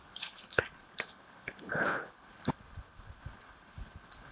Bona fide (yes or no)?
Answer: no